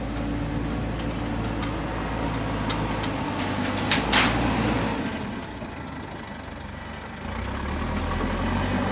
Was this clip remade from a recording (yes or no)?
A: no